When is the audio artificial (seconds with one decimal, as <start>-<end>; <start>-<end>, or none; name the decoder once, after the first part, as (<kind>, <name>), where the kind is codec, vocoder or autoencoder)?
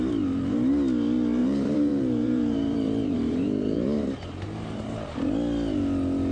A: 1.4-5.1 (vocoder, BigVGAN v2)